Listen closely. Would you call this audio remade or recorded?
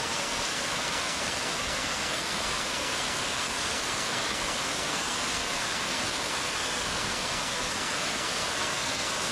remade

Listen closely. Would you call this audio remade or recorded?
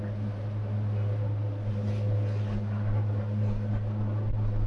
recorded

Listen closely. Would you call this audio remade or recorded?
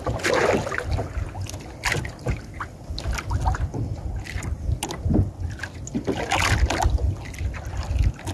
recorded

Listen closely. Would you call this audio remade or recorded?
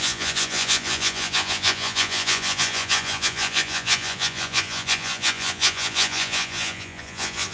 remade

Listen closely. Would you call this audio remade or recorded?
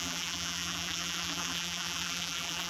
remade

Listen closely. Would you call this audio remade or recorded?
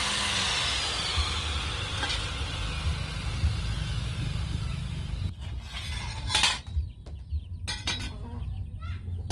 recorded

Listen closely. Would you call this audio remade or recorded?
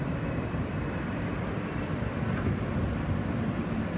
remade